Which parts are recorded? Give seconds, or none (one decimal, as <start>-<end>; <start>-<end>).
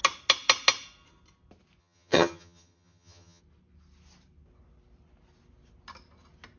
0.0-1.8; 3.4-6.6